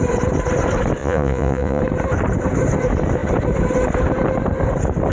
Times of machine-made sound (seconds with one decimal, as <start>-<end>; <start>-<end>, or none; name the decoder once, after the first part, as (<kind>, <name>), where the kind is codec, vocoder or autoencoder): 1.0-1.8 (vocoder, Vocos)